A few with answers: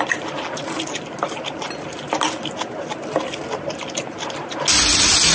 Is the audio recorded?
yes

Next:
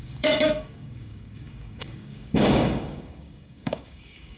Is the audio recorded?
no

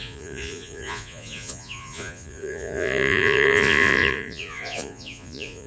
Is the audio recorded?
no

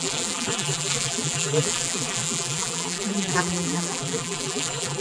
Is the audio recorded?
no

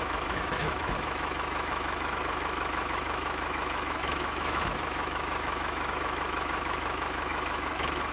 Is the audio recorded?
no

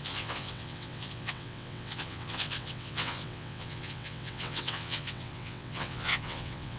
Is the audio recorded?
no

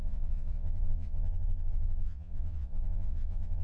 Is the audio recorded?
no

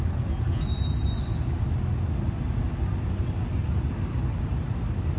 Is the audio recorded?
yes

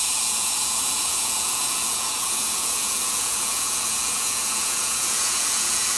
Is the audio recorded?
no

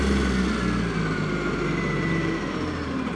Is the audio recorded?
yes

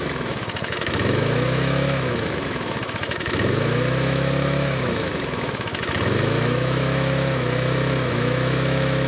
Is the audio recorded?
no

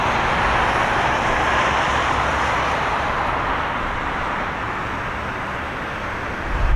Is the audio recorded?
yes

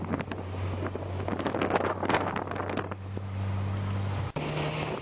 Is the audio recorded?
yes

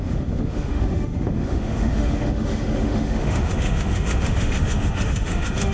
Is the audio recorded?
no